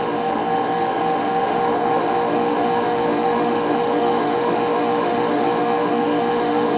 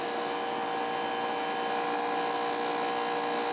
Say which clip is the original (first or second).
second